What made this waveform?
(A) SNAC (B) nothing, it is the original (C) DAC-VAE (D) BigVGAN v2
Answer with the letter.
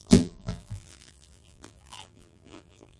D